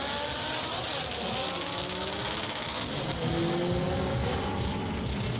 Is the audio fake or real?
real